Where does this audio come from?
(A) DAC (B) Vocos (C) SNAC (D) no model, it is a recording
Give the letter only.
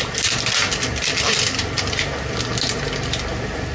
D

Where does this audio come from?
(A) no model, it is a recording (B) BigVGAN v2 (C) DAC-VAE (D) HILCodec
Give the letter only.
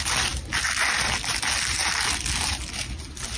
A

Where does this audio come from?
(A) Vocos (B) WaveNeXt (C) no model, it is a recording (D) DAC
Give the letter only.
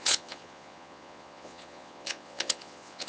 A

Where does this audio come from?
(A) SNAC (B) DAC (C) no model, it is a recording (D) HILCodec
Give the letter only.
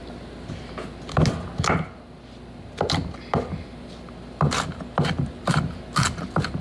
C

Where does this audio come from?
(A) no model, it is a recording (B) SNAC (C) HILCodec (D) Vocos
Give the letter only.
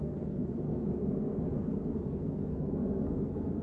B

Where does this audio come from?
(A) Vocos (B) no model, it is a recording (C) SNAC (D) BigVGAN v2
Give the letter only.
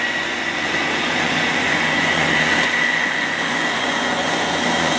A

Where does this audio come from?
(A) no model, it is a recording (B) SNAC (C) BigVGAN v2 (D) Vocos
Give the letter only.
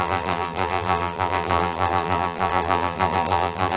C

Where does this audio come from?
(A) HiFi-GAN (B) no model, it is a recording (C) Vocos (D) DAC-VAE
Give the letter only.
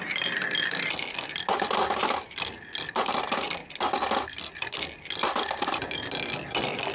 B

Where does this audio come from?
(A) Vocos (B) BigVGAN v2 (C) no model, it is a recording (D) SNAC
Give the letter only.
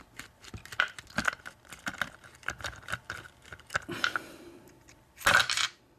C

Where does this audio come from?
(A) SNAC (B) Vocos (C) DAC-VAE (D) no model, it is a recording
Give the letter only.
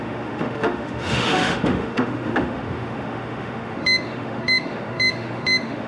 C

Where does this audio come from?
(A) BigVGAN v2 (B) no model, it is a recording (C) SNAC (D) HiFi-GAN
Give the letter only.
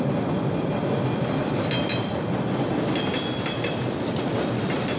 B